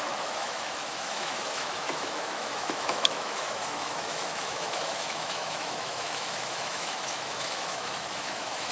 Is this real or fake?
fake